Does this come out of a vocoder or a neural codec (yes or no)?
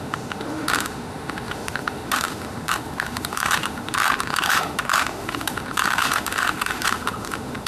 yes